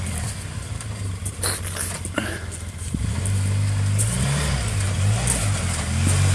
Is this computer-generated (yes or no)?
no